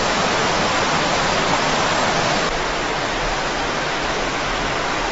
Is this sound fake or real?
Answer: real